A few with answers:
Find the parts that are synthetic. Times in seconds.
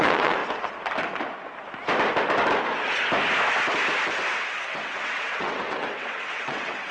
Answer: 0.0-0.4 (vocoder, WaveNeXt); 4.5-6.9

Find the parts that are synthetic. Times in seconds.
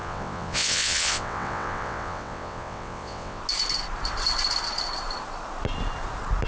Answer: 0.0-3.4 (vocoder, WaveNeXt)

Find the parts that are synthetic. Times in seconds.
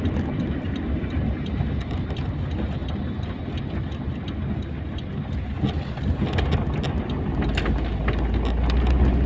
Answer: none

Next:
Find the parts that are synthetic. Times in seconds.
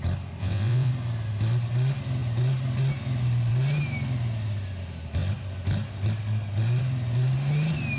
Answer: 0.4-0.9 (vocoder, WaveNeXt)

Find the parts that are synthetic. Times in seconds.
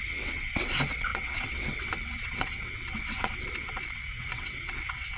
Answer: 0.0-5.2 (vocoder, WaveNeXt)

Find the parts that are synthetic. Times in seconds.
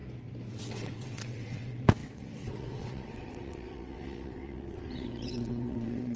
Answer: 0.5-6.2 (vocoder, WaveNeXt)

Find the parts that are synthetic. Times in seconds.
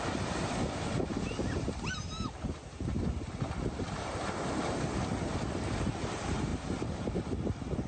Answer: none